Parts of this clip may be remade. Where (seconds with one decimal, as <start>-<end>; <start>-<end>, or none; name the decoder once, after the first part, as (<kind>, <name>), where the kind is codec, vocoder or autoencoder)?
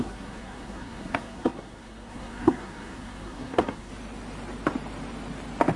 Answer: 0.0-3.9 (codec, SNAC)